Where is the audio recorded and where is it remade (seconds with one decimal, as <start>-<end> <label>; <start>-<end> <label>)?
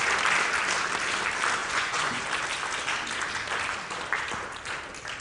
0.0-1.6 recorded; 1.6-2.2 remade; 2.2-5.2 recorded